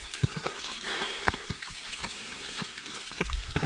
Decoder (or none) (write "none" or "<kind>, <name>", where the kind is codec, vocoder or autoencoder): codec, SNAC